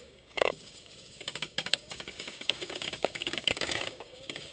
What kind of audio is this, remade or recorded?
remade